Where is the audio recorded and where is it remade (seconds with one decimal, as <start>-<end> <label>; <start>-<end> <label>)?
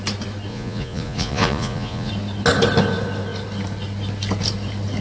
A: 0.0-0.5 recorded; 0.5-2.1 remade; 2.1-5.0 recorded